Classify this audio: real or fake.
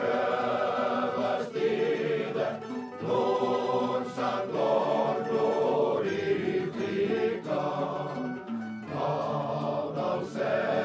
fake